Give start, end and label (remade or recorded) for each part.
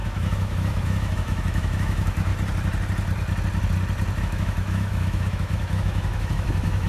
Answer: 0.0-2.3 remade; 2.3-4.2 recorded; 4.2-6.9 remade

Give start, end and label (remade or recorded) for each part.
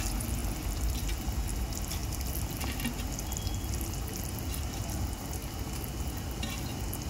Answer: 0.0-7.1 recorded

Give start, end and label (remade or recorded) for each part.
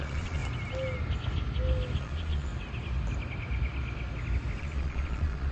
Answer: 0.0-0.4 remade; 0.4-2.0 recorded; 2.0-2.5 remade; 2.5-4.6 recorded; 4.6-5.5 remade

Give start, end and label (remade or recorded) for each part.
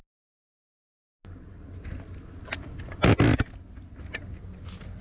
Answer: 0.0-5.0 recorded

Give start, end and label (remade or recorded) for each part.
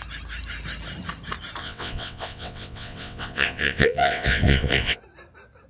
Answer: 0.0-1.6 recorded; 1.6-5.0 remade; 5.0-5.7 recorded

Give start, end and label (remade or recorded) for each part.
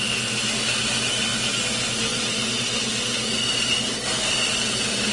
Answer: 0.0-5.1 recorded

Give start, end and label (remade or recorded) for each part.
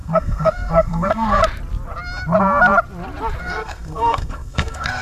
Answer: 0.0-1.4 remade; 1.4-3.4 recorded; 3.4-5.0 remade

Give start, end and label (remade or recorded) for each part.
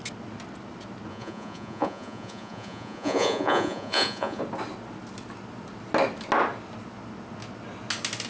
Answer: 0.0-1.1 recorded; 1.1-4.4 remade; 4.4-8.3 recorded